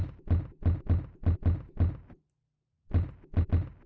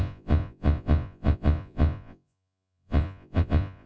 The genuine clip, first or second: first